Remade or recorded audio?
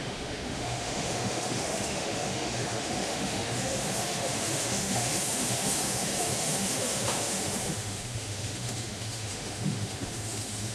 remade